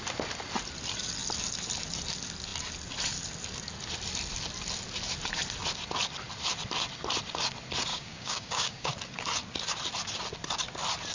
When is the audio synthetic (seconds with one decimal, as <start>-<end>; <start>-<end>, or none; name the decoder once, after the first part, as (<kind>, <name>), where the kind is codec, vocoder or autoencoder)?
7.9-8.9 (codec, DAC)